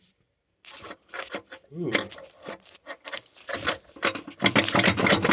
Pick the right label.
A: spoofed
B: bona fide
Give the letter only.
A